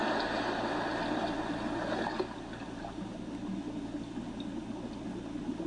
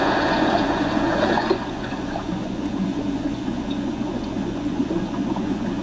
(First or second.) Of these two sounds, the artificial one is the second